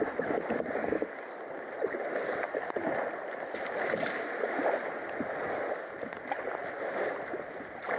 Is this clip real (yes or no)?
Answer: yes